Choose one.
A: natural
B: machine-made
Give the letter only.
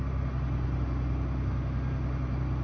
A